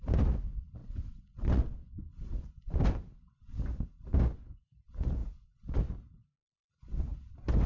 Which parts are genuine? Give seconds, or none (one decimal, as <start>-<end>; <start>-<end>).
0.0-0.8; 2.0-7.7